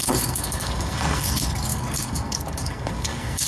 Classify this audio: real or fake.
fake